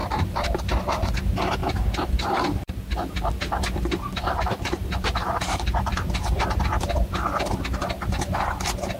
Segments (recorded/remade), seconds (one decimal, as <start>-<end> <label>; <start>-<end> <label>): 0.0-0.7 remade; 0.7-1.6 recorded; 1.6-6.1 remade; 6.1-9.0 recorded